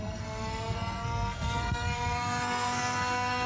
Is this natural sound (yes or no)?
no